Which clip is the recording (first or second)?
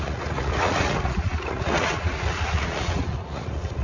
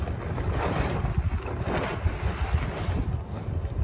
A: second